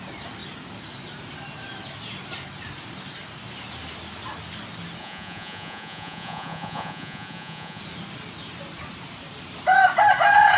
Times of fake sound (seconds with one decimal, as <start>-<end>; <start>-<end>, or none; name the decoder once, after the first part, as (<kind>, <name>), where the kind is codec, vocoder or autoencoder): 5.0-7.8 (vocoder, Vocos)